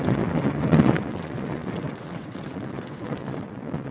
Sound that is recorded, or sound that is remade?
remade